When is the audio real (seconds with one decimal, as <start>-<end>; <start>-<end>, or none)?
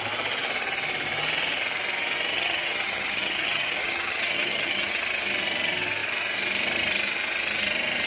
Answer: 0.0-2.3; 5.0-8.1